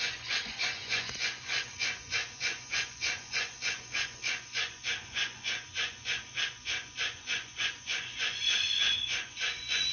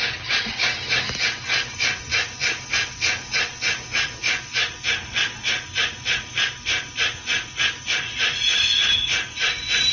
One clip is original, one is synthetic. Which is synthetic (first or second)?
first